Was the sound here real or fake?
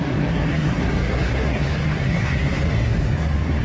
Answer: fake